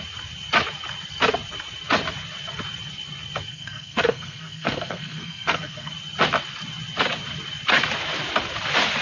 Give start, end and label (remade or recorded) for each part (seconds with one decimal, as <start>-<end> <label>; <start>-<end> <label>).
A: 0.0-3.5 recorded; 3.5-5.9 remade; 5.9-9.0 recorded